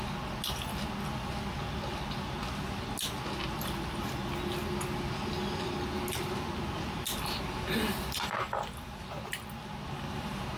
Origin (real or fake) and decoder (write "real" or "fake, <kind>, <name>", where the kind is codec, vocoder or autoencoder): real